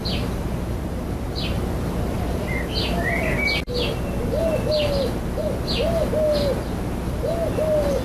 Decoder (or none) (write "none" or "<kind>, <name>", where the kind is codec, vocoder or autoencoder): none